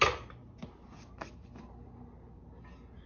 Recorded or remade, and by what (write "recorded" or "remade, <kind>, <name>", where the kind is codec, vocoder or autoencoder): recorded